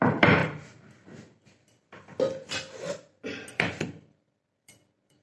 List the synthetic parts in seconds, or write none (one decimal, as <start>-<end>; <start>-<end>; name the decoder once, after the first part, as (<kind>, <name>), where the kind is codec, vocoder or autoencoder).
0.0-0.4 (vocoder, BigVGAN v2); 3.5-5.2